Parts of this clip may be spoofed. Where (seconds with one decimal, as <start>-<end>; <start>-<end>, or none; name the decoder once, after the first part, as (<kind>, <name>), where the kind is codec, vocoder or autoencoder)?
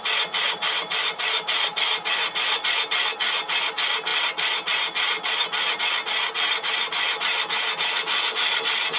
2.2-2.8 (vocoder, Vocos)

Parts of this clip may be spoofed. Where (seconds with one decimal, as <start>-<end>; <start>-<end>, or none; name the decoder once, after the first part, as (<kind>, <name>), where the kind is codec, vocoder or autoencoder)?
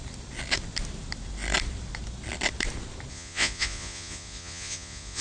3.1-5.2 (vocoder, Vocos)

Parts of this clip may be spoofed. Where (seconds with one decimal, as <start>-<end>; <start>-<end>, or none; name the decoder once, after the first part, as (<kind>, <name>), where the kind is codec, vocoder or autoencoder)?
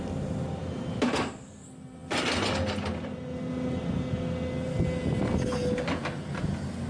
none